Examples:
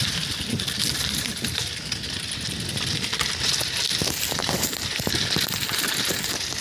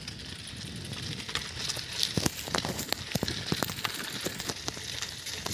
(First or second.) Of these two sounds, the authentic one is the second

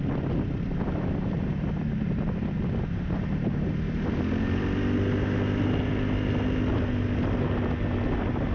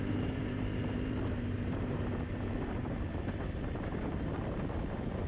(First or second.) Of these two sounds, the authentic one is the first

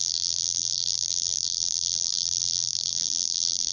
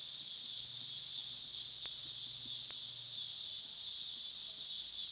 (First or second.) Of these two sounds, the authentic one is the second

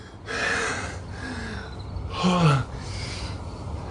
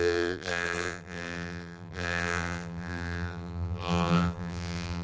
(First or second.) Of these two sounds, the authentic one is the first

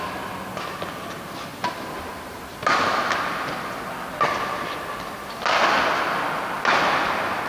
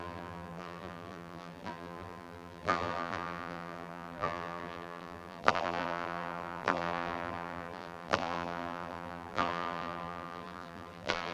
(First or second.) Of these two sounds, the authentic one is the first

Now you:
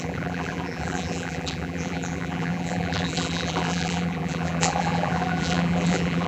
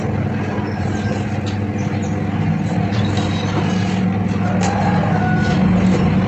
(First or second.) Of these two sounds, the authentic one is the second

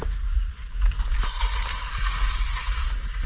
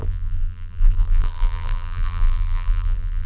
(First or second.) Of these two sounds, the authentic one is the first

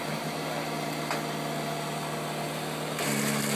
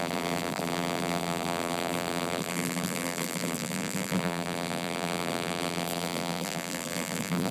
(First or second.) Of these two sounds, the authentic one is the first